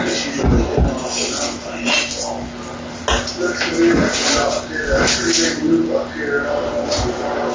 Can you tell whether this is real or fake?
real